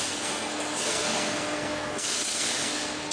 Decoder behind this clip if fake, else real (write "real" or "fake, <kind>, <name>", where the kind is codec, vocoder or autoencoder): fake, codec, SNAC